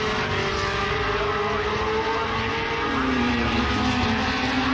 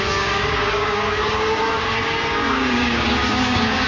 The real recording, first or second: first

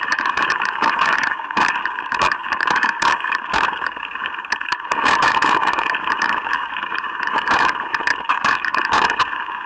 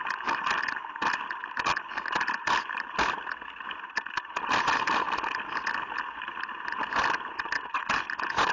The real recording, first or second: second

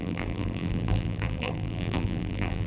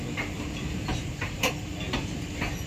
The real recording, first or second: second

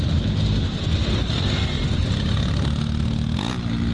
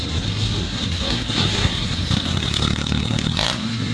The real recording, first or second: first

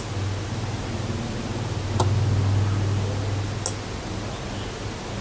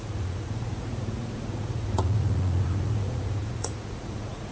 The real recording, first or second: first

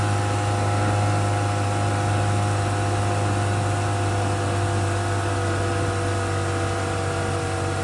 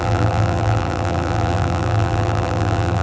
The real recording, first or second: first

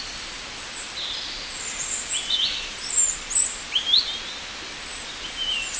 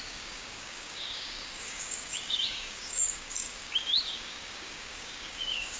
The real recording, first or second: first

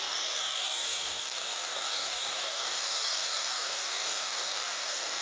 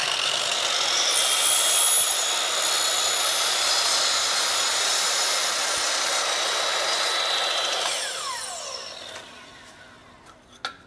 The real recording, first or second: second